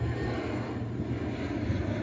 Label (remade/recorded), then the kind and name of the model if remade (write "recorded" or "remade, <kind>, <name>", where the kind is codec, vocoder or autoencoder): recorded